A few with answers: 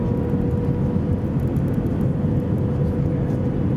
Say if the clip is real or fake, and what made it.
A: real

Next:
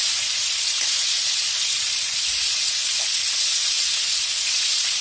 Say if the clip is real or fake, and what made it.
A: fake, vocoder, Vocos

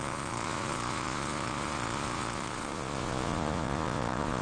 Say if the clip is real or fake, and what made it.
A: fake, vocoder, Vocos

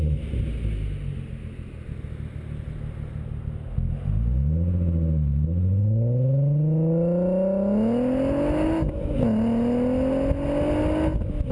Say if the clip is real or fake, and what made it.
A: real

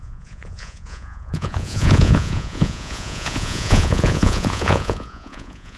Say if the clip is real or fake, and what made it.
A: fake, vocoder, Vocos